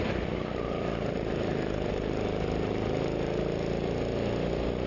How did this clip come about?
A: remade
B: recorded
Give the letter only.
B